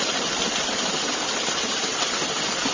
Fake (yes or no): no